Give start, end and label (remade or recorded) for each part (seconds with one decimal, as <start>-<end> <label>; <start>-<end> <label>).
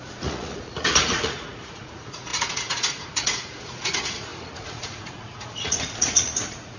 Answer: 0.0-6.8 remade